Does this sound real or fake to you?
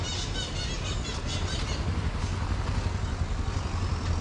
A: real